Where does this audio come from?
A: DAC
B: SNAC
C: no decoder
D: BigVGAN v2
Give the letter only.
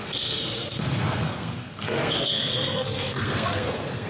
B